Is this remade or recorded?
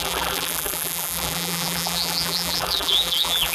remade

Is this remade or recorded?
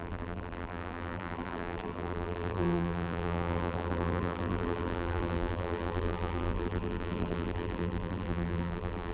remade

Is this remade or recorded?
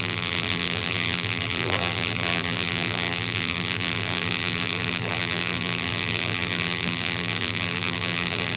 remade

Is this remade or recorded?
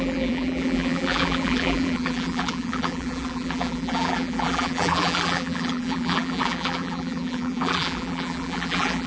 remade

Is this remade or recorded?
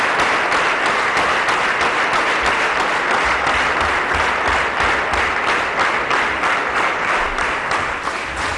recorded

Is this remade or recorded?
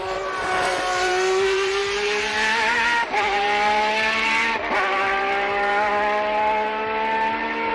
remade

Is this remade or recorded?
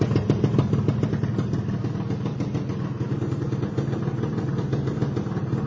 recorded